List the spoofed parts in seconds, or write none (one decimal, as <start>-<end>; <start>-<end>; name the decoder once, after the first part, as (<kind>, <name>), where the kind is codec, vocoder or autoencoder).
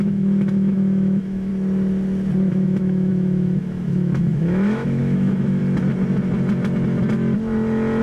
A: 0.0-1.5 (autoencoder, DAC-VAE); 2.5-5.6